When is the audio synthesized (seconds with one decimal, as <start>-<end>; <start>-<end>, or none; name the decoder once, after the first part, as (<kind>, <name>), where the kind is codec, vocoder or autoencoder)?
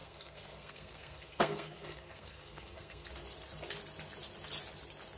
0.0-3.1 (codec, SNAC)